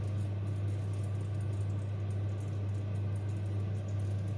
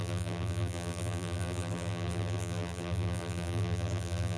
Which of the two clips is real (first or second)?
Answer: first